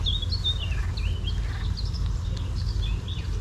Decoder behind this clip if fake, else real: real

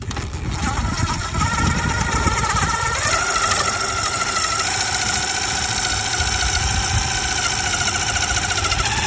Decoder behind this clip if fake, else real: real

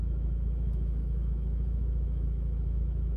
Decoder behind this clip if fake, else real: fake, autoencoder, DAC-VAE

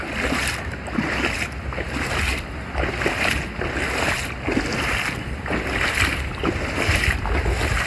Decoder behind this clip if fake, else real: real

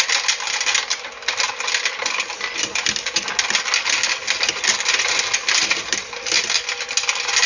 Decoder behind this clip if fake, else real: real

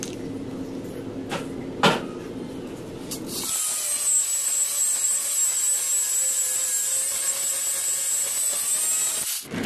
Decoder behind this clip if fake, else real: real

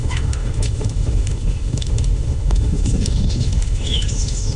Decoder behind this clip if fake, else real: fake, autoencoder, DAC-VAE